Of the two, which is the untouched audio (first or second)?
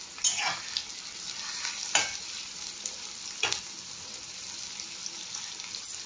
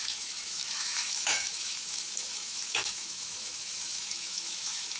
first